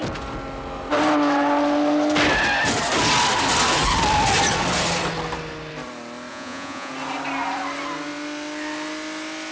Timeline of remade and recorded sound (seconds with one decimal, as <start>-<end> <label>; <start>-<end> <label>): 0.0-6.3 recorded; 6.3-6.9 remade; 6.9-9.5 recorded